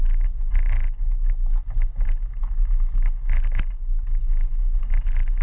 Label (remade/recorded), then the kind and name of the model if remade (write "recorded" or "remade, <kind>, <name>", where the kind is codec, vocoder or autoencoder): recorded